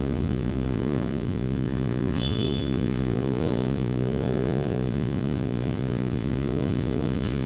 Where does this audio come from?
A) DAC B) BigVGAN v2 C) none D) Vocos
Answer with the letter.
D